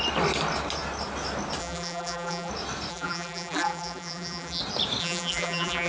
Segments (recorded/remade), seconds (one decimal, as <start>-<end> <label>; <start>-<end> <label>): 0.0-1.6 recorded; 1.6-2.5 remade; 2.5-2.9 recorded; 2.9-4.6 remade; 4.6-5.0 recorded; 5.0-5.9 remade